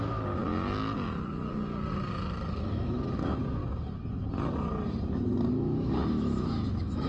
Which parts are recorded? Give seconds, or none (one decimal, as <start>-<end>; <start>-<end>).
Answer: 0.4-2.6; 3.6-5.5